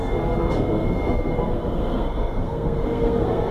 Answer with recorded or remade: remade